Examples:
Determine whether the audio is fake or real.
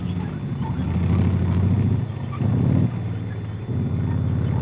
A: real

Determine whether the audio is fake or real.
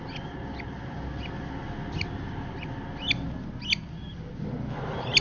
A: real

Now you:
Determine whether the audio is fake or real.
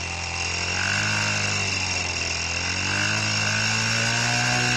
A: real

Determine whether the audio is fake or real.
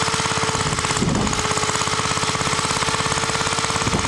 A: real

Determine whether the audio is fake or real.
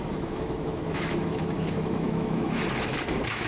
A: fake